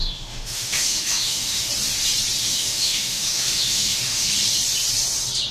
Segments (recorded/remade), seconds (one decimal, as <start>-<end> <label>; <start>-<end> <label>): 0.0-1.7 remade; 1.7-2.4 recorded; 2.4-4.3 remade; 4.3-5.5 recorded